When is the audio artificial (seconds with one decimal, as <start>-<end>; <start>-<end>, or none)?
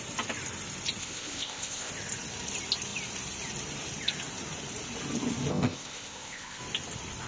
1.0-1.9; 5.5-6.6